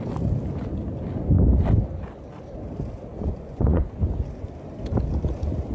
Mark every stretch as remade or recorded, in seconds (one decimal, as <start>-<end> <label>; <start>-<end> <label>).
0.0-3.1 recorded; 3.1-3.9 remade; 3.9-5.7 recorded